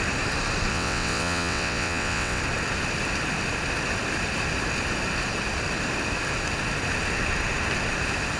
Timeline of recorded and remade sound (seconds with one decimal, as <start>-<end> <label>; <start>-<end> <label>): 0.0-0.7 recorded; 0.7-2.4 remade; 2.4-8.4 recorded